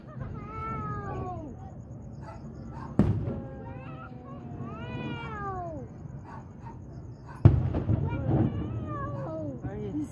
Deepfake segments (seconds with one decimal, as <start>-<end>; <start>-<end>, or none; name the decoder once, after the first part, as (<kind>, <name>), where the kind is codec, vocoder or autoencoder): 0.6-3.8 (vocoder, BigVGAN v2); 7.2-8.1